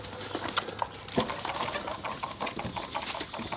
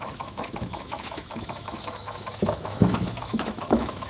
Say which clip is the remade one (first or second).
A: second